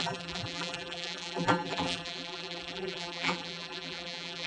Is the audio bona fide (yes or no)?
no